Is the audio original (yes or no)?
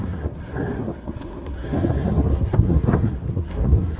no